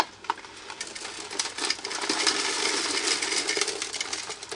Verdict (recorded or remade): recorded